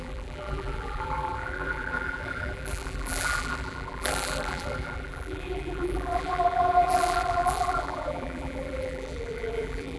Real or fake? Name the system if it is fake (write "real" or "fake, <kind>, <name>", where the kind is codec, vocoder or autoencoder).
fake, vocoder, BigVGAN v2